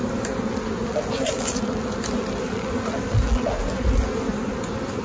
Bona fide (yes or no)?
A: yes